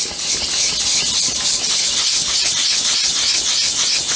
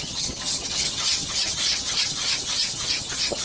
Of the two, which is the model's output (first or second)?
second